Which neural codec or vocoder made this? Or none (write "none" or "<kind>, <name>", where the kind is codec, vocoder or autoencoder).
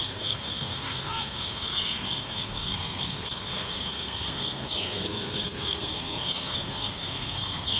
codec, SNAC